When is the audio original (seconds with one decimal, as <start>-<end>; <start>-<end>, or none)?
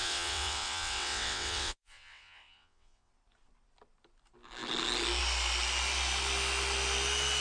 3.1-7.4